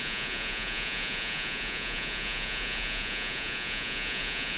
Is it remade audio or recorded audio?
remade